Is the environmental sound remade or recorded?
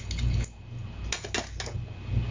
recorded